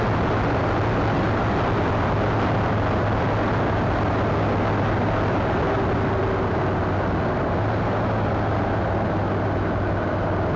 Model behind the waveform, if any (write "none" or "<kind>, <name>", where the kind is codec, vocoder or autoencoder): none